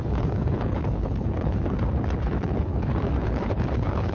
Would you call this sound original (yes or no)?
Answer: no